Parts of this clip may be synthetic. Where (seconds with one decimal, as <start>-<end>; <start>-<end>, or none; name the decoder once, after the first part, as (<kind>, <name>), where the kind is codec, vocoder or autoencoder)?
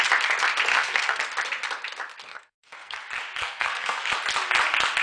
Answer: 0.7-1.2 (codec, SNAC); 2.3-3.0; 3.4-4.1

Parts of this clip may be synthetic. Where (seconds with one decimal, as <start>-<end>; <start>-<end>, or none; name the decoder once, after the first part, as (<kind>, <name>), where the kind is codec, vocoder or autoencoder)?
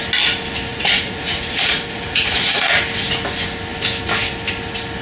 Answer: 0.7-2.8 (vocoder, Vocos)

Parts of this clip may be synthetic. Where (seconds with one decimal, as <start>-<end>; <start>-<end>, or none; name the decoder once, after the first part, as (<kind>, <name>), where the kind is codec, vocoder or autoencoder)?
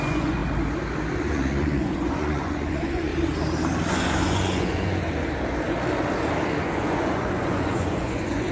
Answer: 0.0-0.4 (vocoder, Vocos); 1.3-3.1; 3.9-5.0; 6.5-8.5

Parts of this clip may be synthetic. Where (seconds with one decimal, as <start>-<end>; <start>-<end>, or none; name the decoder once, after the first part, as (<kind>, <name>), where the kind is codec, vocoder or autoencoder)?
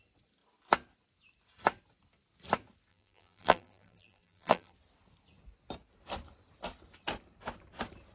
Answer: 2.9-4.7 (vocoder, BigVGAN v2)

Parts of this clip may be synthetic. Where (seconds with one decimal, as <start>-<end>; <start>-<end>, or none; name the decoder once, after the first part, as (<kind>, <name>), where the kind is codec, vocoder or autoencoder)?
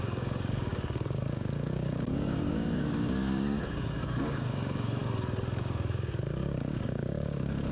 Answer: 0.0-5.0 (codec, DAC); 5.6-7.7